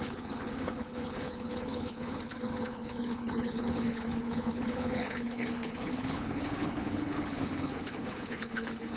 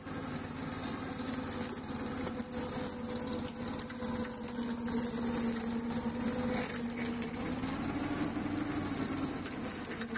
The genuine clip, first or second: second